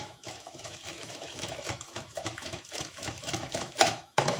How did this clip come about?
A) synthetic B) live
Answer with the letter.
A